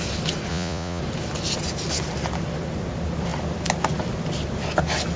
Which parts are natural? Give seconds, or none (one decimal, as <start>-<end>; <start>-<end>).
0.0-0.5; 1.0-5.2